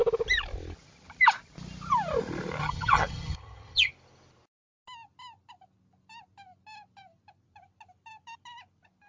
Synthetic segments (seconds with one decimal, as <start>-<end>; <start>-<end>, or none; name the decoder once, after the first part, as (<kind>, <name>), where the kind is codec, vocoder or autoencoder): 2.6-3.9 (vocoder, HiFi-GAN)